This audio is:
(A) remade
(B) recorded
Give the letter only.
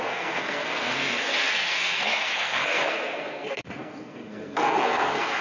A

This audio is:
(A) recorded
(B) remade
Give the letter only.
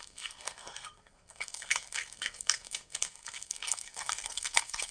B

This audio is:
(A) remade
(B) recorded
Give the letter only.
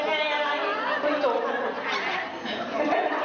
B